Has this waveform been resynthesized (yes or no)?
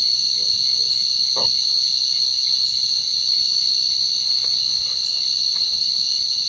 yes